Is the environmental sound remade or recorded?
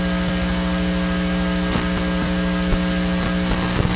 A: recorded